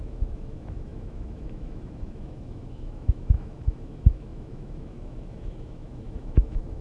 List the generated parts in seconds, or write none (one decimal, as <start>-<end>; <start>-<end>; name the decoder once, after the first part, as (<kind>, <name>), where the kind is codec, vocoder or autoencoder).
0.0-6.8 (autoencoder, DAC-VAE)